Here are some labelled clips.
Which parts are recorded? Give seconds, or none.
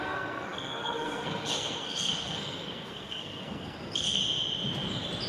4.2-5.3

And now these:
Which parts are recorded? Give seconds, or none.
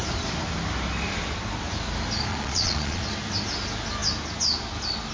0.0-2.3; 3.0-5.1